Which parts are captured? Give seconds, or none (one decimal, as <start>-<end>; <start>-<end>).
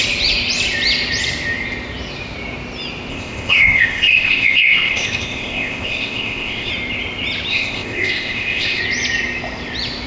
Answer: 0.0-3.1; 6.7-7.5; 8.8-10.1